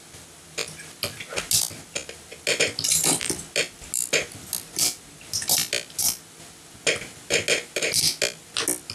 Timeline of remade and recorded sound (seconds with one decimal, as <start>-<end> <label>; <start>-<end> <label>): 0.0-8.9 recorded